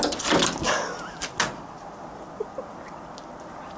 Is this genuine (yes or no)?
yes